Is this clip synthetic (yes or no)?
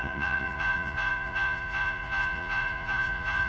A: yes